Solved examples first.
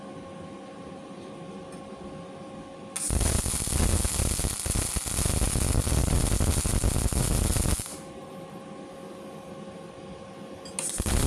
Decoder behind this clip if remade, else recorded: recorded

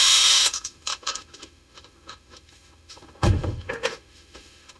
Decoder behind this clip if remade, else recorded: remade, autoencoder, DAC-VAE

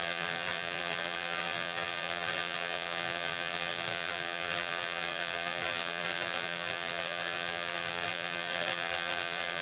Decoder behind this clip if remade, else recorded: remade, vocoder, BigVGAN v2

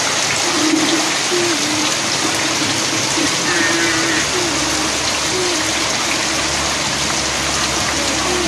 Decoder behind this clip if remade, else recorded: recorded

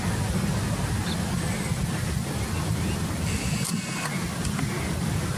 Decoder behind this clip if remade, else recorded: recorded